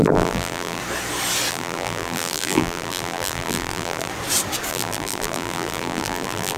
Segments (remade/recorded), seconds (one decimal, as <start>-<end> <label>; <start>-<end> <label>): 0.0-0.8 remade; 0.8-1.5 recorded; 1.5-4.1 remade; 4.1-4.7 recorded; 4.7-6.6 remade